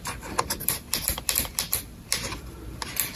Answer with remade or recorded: remade